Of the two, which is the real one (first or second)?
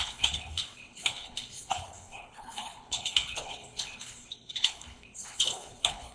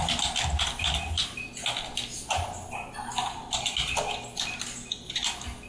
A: second